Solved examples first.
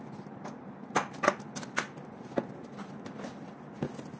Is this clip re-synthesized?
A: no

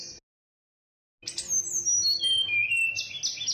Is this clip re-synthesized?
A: no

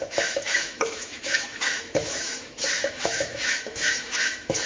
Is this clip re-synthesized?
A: yes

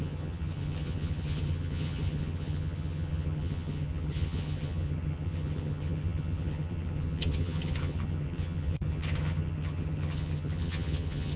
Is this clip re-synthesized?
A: yes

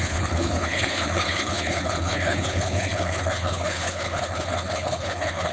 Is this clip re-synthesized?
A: yes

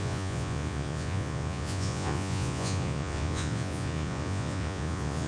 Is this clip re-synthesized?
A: yes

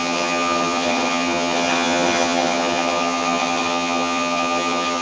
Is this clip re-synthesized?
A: yes